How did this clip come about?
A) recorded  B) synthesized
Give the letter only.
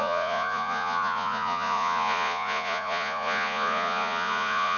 B